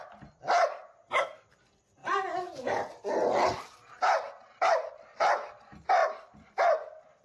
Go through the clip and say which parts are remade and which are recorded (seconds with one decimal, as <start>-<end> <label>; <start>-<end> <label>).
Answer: 0.0-7.2 recorded